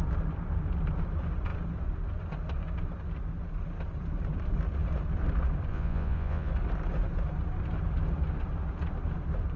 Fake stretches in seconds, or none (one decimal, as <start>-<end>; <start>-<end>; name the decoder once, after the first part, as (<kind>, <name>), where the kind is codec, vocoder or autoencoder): 5.7-6.5 (vocoder, Vocos)